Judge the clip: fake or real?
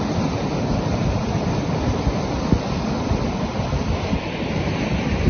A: real